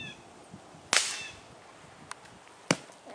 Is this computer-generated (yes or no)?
no